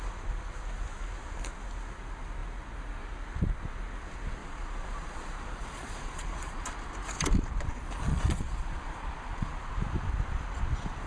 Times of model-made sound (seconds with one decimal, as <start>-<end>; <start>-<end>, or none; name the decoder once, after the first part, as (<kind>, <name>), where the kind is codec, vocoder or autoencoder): 4.4-6.7 (vocoder, Vocos); 8.1-9.5